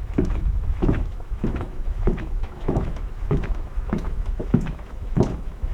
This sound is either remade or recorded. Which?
remade